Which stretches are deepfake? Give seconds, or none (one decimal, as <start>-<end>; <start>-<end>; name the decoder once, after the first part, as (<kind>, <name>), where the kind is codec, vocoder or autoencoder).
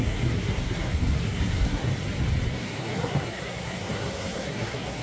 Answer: 0.0-1.9 (codec, SNAC); 2.5-5.0